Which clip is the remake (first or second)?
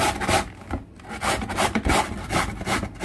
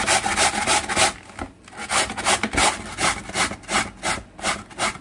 first